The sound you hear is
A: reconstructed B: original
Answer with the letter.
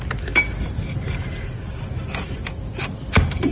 B